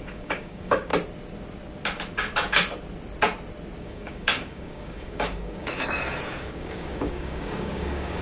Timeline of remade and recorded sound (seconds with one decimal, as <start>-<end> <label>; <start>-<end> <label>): 0.0-0.9 remade; 0.9-3.8 recorded; 3.8-8.2 remade